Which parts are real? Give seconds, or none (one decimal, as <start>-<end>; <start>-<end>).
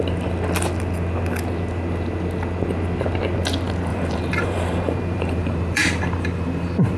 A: 0.0-3.9